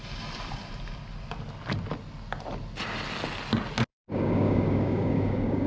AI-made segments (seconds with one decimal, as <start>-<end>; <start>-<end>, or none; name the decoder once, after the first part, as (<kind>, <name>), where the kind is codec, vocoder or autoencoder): 3.9-5.7 (codec, DAC)